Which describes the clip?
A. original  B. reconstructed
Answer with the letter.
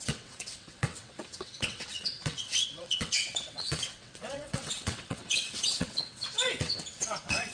B